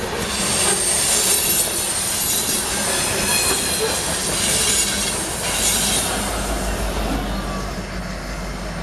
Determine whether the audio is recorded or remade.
recorded